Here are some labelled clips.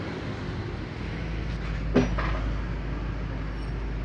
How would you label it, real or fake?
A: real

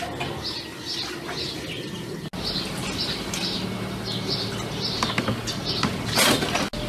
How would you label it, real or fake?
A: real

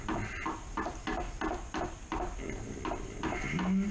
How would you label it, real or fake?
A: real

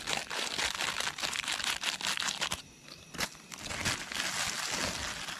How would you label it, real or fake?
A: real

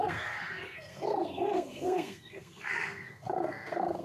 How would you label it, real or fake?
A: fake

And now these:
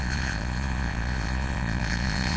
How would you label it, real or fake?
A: fake